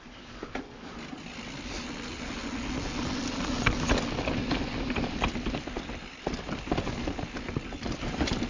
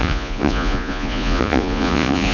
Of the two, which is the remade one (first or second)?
second